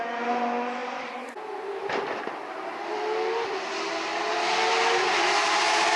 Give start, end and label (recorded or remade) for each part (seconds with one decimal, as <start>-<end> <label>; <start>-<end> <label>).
0.0-6.0 recorded